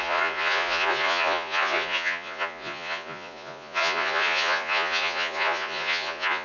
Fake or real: fake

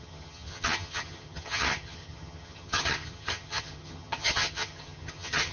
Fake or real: fake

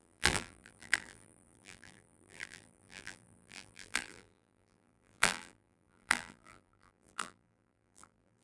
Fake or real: fake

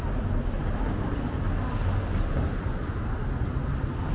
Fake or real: real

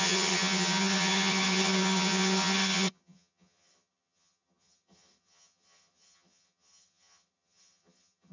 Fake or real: fake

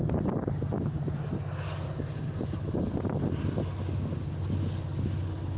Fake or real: real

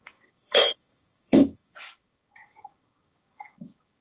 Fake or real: fake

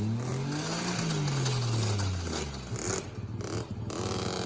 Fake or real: real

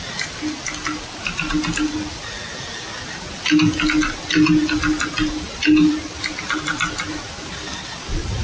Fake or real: real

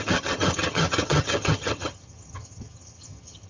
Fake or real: fake